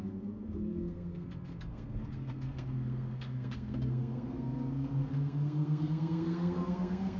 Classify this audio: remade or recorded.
remade